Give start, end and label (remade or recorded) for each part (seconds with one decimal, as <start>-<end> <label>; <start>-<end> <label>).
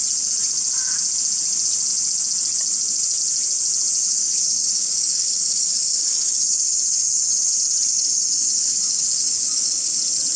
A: 0.0-4.0 recorded; 4.0-7.5 remade; 7.5-7.9 recorded; 7.9-10.0 remade; 10.0-10.4 recorded